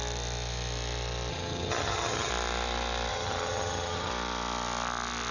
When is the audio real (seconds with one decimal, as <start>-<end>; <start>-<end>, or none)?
0.0-1.3; 2.3-3.1; 4.1-5.3